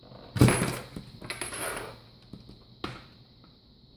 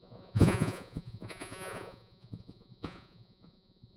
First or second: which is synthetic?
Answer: second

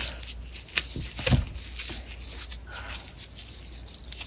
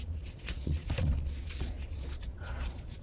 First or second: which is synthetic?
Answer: second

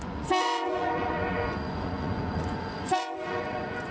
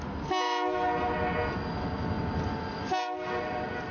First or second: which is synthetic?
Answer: first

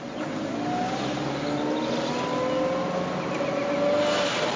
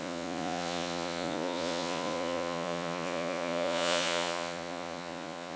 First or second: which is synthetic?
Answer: second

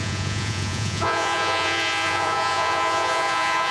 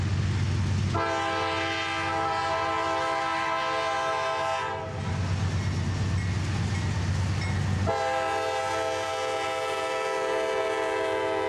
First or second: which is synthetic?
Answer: first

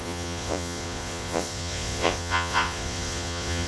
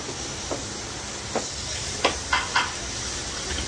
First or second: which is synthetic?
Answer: first